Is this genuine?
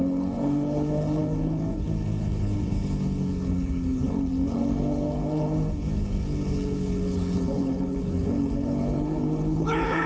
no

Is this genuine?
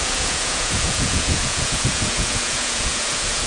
no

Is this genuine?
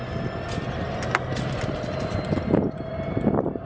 yes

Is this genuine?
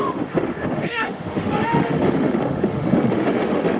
no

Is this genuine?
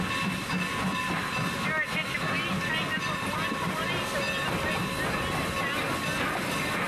yes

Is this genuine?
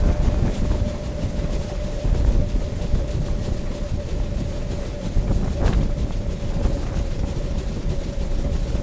yes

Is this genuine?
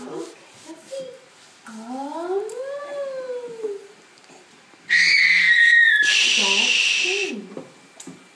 yes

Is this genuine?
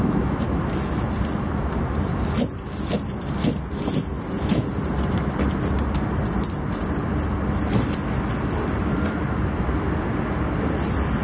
yes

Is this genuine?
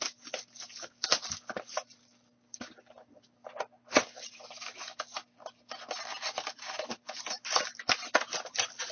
yes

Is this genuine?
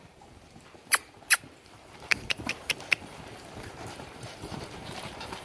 no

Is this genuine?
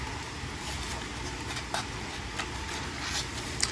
yes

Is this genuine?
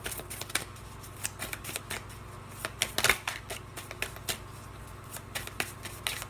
yes